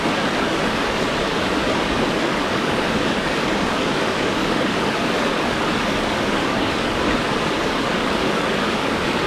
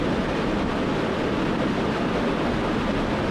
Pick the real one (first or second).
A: second